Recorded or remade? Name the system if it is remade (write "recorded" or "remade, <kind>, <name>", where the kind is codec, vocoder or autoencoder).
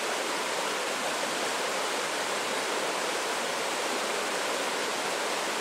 recorded